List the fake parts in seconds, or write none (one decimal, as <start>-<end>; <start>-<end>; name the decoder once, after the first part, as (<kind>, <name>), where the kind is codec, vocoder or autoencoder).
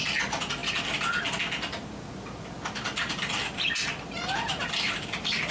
none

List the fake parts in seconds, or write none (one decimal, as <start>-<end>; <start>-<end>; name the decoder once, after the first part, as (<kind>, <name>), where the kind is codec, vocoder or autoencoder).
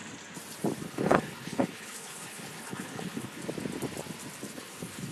0.8-3.4 (codec, HILCodec); 4.5-5.1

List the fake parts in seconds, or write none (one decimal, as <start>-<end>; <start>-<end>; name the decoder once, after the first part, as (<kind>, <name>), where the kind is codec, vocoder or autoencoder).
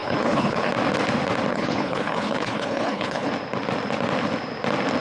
0.0-0.7 (codec, HILCodec); 1.5-3.3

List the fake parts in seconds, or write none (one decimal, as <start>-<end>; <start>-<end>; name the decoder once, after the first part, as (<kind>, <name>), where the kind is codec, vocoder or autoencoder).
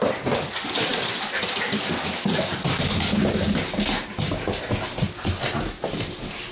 none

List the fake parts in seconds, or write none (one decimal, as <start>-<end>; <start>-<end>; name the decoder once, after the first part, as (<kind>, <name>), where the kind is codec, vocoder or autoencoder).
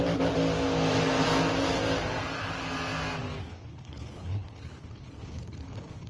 3.5-6.1 (codec, HILCodec)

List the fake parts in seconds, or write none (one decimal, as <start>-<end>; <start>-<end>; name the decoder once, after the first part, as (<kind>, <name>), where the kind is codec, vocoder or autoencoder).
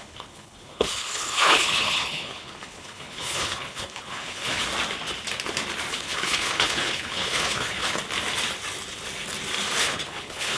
0.0-4.6 (codec, HILCodec); 5.9-8.0; 9.8-10.6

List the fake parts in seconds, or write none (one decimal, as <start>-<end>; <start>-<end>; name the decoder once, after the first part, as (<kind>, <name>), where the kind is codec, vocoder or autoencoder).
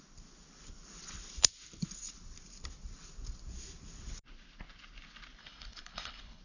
5.4-6.4 (codec, HILCodec)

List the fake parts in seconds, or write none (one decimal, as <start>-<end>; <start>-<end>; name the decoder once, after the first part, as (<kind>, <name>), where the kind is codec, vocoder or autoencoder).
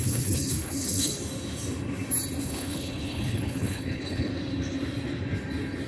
0.0-1.1 (codec, HILCodec); 2.4-4.3